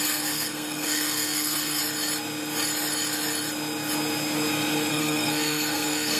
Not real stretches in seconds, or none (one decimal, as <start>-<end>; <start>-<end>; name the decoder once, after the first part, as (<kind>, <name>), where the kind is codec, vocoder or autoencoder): 0.0-1.8 (codec, SNAC); 4.9-6.2